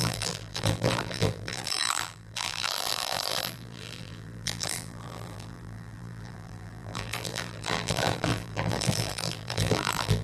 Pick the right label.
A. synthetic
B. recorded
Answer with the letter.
A